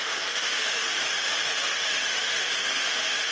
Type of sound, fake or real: fake